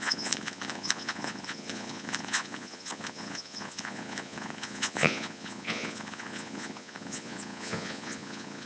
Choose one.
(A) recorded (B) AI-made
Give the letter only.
B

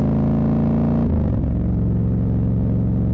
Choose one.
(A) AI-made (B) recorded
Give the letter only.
B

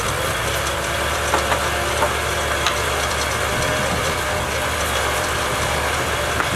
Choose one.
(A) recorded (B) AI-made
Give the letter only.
A